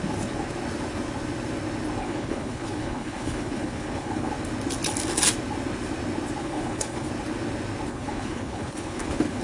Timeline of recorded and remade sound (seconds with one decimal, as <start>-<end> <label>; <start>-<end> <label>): 0.0-2.0 recorded; 2.0-4.3 remade; 4.3-6.4 recorded; 6.4-7.1 remade; 7.1-7.9 recorded; 7.9-9.4 remade